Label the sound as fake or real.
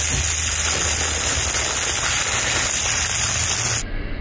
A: real